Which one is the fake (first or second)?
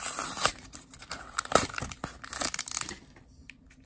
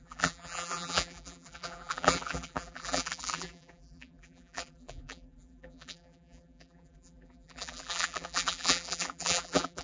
second